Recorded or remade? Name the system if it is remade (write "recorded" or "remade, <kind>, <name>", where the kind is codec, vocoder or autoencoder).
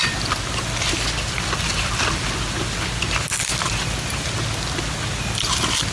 recorded